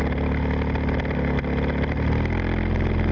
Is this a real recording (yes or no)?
yes